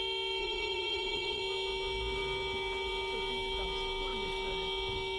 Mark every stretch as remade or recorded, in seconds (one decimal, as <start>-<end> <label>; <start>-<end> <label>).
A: 0.0-0.4 recorded; 0.4-1.4 remade; 1.4-5.2 recorded